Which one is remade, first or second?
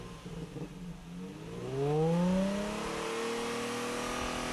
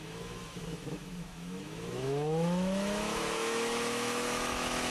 second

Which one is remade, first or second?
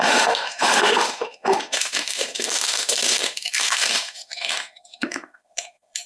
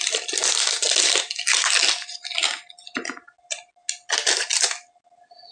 first